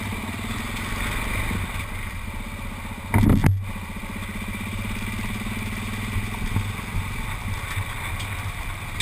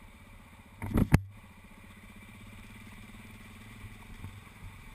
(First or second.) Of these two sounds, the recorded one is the first